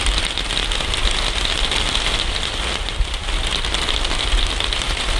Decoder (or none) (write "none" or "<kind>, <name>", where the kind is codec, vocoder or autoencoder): none